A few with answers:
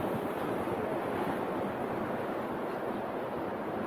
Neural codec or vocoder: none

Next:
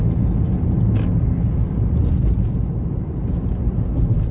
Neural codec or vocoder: none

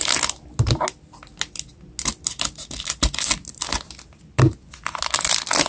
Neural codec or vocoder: none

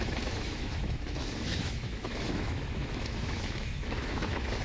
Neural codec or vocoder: autoencoder, DAC-VAE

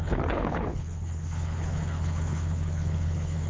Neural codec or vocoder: codec, HILCodec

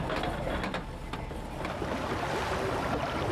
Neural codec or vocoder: none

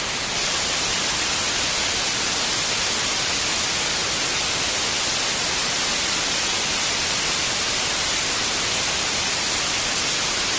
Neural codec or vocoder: none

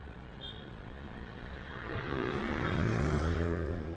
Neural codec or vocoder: vocoder, Vocos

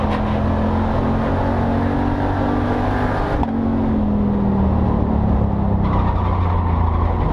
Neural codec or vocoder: none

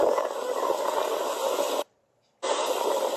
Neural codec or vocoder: none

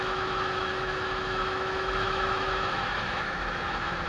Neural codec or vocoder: autoencoder, DAC-VAE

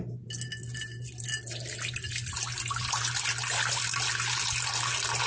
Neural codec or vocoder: none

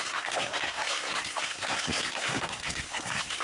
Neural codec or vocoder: codec, SNAC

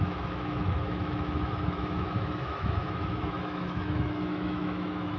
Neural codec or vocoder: autoencoder, DAC-VAE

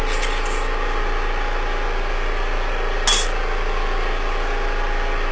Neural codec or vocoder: none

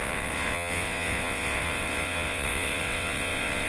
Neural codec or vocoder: vocoder, WaveNeXt